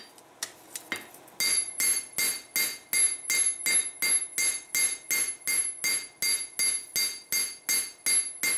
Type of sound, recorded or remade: recorded